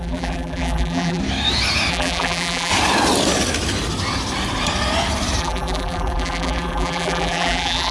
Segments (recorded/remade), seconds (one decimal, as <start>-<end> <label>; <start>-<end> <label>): 0.0-1.2 remade; 1.2-1.9 recorded; 1.9-2.7 remade; 2.7-5.4 recorded; 5.4-7.9 remade